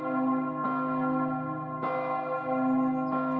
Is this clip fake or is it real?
real